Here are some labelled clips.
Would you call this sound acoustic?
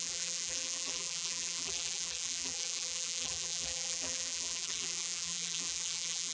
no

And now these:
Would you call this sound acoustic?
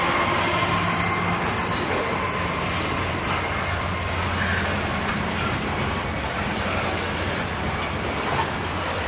yes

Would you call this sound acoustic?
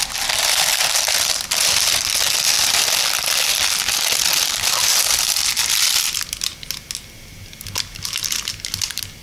yes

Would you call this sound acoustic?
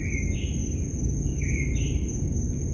yes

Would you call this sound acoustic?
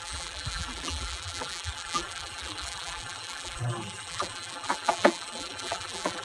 no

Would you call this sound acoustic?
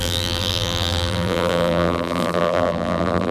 no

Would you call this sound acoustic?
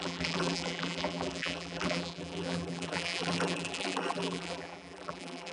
no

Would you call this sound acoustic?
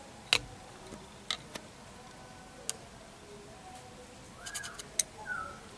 yes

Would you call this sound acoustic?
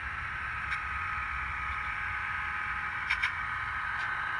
yes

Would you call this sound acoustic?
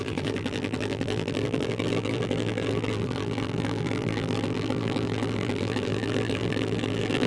no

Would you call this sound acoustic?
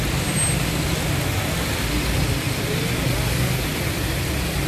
yes